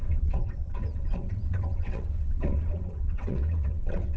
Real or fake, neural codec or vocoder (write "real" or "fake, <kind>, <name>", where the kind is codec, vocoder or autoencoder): fake, vocoder, WaveNeXt